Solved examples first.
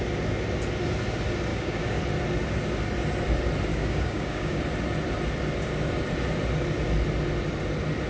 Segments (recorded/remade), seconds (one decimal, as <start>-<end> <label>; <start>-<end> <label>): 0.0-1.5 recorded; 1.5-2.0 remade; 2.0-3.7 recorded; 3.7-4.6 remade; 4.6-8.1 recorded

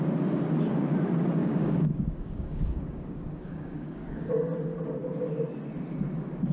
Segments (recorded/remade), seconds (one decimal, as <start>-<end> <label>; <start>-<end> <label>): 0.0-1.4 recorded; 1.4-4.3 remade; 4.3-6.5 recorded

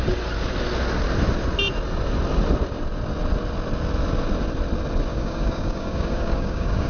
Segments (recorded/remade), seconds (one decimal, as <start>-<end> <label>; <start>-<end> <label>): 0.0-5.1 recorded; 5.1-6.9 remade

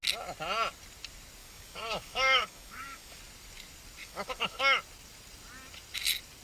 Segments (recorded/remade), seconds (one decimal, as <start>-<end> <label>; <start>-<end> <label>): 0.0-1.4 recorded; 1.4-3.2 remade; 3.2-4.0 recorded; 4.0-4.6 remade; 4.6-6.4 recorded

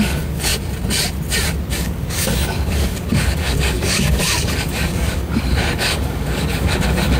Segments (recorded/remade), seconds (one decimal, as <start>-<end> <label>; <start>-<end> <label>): 0.0-0.5 remade; 0.5-1.7 recorded; 1.7-7.2 remade